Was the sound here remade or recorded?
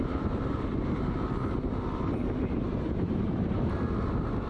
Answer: remade